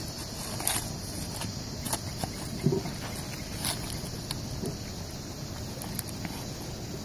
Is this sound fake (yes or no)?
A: no